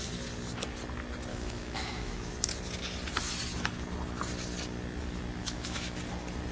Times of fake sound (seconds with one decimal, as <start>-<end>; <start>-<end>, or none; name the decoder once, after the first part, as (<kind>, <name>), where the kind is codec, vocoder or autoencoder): 1.3-2.3 (autoencoder, DAC-VAE); 5.4-6.0